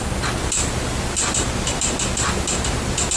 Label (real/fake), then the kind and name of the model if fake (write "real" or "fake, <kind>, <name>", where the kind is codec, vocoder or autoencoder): real